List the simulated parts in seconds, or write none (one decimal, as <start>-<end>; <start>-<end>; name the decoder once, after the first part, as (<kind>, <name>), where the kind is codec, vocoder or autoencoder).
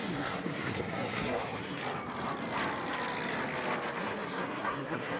0.0-1.8 (codec, SNAC); 4.0-5.2